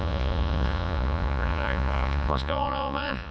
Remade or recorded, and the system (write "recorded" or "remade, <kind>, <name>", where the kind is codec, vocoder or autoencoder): remade, vocoder, Vocos